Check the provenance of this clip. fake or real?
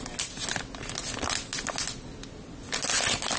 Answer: real